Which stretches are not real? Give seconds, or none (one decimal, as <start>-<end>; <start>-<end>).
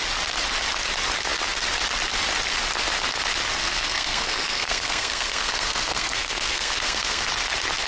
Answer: 3.6-7.3